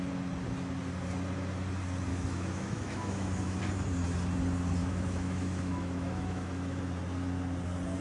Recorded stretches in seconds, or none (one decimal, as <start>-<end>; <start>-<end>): 0.0-2.1; 3.6-4.8; 6.8-8.0